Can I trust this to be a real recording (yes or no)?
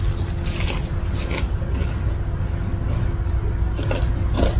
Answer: yes